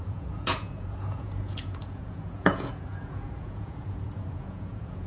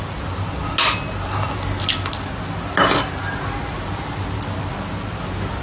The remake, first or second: first